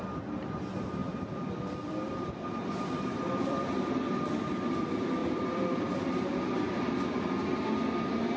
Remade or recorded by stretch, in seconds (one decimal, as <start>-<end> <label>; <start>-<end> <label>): 0.0-1.0 recorded; 1.0-4.3 remade; 4.3-5.2 recorded; 5.2-6.5 remade; 6.5-8.4 recorded